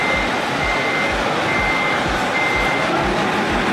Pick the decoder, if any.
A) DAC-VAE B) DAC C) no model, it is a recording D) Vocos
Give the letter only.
C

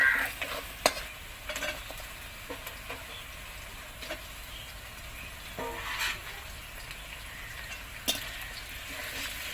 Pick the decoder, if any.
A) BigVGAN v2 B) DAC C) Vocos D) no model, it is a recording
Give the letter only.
D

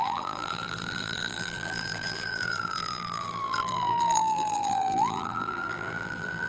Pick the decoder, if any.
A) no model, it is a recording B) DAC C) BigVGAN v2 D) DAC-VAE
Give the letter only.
C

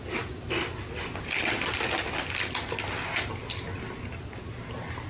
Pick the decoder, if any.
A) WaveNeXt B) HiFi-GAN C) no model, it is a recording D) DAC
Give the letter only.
C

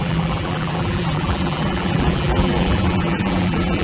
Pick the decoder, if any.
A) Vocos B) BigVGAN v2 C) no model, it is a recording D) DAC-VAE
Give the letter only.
B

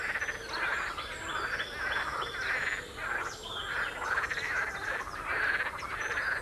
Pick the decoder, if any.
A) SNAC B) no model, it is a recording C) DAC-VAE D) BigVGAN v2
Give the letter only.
B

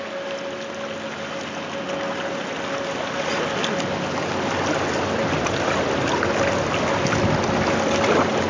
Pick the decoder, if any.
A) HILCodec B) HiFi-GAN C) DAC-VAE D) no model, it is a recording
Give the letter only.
D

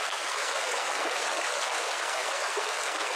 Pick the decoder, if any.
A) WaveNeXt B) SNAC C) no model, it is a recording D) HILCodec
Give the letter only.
B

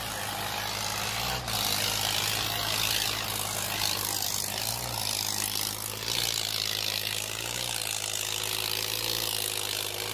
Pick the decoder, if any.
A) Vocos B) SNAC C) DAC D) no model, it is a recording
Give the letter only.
D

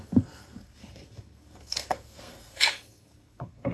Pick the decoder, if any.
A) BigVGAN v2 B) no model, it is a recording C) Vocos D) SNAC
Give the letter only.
D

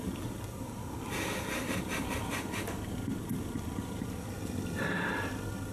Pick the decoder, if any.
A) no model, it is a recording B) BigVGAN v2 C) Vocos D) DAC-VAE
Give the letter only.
B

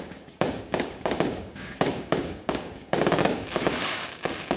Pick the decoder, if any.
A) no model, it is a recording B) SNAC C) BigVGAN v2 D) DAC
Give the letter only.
D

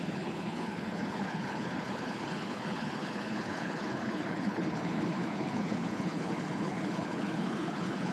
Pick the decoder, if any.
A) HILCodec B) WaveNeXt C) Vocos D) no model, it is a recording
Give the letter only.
A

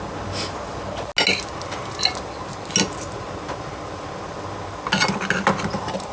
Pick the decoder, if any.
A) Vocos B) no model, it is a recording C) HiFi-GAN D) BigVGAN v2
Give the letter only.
B